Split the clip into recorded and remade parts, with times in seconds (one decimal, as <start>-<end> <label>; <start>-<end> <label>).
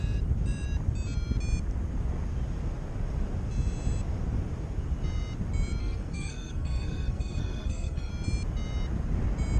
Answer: 0.0-5.8 recorded; 5.8-8.1 remade; 8.1-9.6 recorded